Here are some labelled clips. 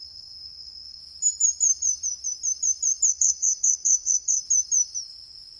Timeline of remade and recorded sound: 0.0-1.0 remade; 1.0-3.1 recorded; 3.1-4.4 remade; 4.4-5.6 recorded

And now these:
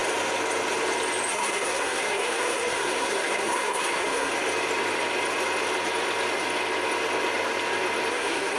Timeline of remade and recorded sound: 0.0-1.3 recorded; 1.3-4.3 remade; 4.3-8.1 recorded; 8.1-8.6 remade

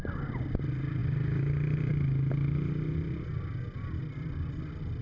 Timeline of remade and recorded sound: 0.0-5.0 recorded

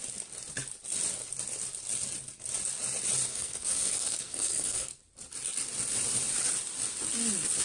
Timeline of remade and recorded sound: 0.0-3.3 recorded; 3.3-5.0 remade; 5.0-7.6 recorded

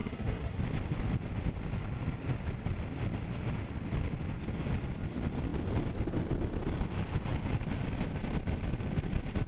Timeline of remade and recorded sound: 0.0-0.6 remade; 0.6-9.5 recorded

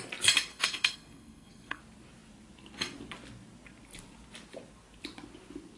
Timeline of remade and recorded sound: 0.0-0.5 recorded; 0.5-1.8 remade; 1.8-5.8 recorded

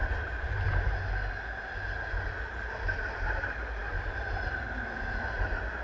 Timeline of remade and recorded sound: 0.0-5.8 recorded

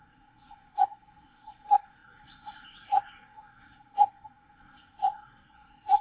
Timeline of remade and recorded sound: 0.0-6.0 remade